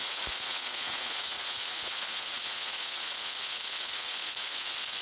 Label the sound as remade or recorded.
remade